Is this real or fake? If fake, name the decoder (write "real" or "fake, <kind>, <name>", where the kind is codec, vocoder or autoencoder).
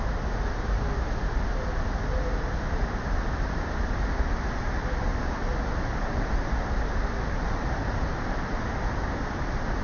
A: real